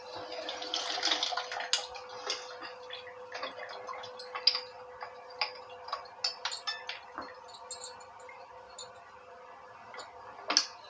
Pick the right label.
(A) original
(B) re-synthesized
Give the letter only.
A